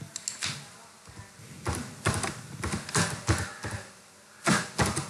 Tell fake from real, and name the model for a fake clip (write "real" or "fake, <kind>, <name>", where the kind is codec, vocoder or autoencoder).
real